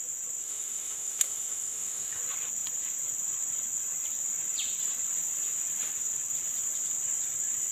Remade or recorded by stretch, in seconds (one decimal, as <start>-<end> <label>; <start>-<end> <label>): 0.0-0.4 recorded; 0.4-2.2 remade; 2.2-7.7 recorded